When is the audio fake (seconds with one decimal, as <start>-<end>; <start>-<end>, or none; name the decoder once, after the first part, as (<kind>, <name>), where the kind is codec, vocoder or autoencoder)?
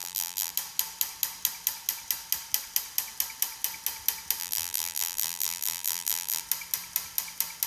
0.0-0.5 (vocoder, BigVGAN v2); 4.4-6.4